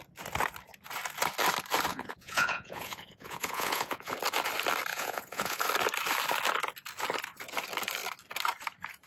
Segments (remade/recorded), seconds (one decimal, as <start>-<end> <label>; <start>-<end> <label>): 0.0-1.9 recorded; 1.9-4.1 remade; 4.1-4.9 recorded; 4.9-5.6 remade; 5.6-9.1 recorded